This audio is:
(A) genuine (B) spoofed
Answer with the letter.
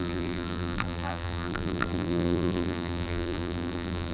B